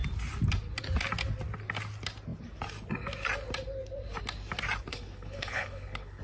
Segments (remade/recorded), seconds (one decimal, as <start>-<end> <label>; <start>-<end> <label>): 0.0-4.9 recorded; 4.9-6.2 remade